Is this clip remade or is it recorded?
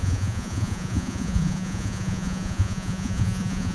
remade